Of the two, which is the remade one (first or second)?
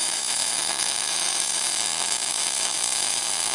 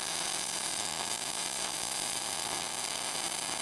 first